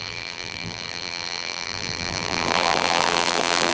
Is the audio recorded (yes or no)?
no